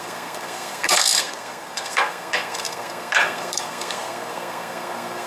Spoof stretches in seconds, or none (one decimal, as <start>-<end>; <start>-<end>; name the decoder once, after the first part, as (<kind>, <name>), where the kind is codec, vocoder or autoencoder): 0.0-5.3 (codec, SNAC)